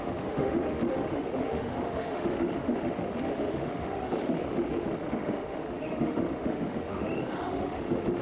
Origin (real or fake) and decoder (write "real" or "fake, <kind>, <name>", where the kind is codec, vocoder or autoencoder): fake, autoencoder, DAC-VAE